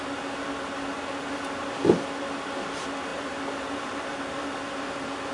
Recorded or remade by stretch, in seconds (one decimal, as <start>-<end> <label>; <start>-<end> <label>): 0.0-5.3 recorded